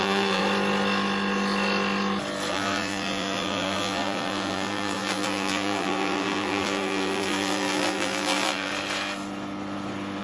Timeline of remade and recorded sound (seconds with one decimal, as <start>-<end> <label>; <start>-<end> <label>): 0.0-0.4 remade; 0.4-2.5 recorded; 2.5-8.7 remade; 8.7-10.2 recorded